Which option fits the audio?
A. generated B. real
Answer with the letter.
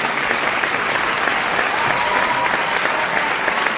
B